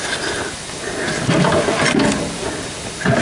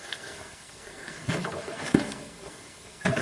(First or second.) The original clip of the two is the first